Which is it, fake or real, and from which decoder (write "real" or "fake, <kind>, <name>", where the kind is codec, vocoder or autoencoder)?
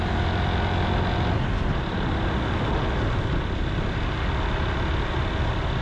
real